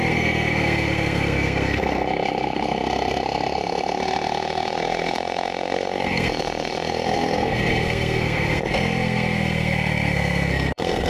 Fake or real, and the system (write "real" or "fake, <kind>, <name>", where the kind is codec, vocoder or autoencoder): fake, codec, SNAC